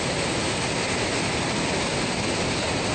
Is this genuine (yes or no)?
yes